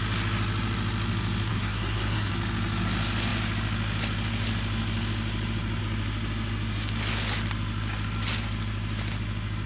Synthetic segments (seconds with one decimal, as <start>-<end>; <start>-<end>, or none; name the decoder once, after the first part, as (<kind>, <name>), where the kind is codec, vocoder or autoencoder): 1.5-2.3 (codec, SNAC)